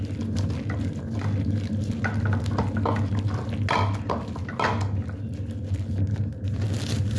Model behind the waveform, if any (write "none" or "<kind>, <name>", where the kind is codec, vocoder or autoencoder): none